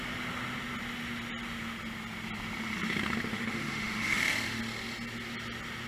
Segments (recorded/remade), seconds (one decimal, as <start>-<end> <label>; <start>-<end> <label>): 0.0-3.3 recorded; 3.3-4.6 remade; 4.6-5.9 recorded